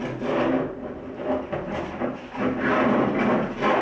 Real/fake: real